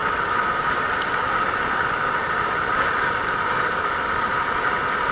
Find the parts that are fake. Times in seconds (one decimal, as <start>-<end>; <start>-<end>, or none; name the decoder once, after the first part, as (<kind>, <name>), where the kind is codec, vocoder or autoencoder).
none